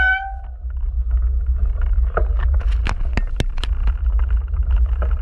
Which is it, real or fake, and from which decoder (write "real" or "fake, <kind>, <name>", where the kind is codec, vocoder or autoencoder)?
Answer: real